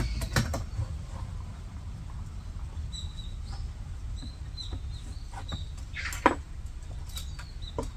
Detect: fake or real real